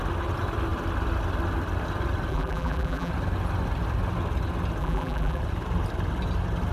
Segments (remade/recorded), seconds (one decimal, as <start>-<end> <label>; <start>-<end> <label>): 0.0-2.3 recorded; 2.3-3.1 remade; 3.1-4.8 recorded; 4.8-5.4 remade; 5.4-6.7 recorded